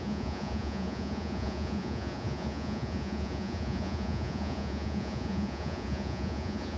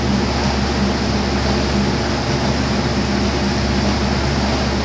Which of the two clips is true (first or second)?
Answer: second